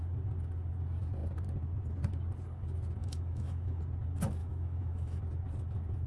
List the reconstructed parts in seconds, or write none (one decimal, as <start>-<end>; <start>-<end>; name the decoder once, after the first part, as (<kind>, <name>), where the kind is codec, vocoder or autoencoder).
3.0-3.8 (autoencoder, DAC-VAE); 4.4-5.2